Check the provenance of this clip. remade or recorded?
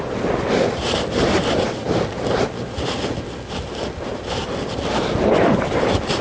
recorded